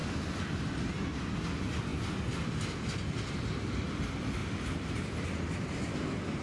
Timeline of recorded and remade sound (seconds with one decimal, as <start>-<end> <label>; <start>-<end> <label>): 0.0-4.4 recorded; 4.4-5.4 remade; 5.4-6.4 recorded